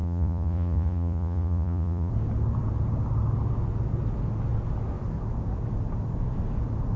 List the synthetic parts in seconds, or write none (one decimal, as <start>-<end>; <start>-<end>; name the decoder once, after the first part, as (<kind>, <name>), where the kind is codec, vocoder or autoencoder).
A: 0.0-2.1 (vocoder, Vocos)